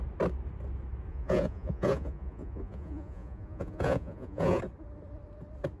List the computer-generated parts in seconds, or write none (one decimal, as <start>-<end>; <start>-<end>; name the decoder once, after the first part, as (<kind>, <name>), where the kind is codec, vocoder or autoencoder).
1.1-4.6 (vocoder, Vocos)